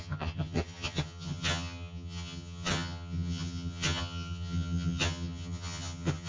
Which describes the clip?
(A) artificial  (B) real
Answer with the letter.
A